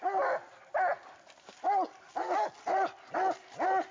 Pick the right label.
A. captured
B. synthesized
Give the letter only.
A